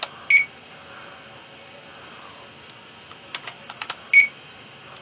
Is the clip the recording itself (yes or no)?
yes